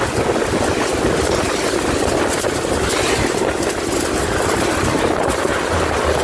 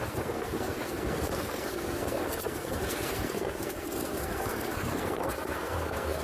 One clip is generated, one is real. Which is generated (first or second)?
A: second